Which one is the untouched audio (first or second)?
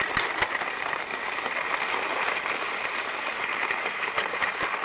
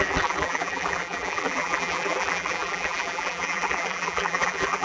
first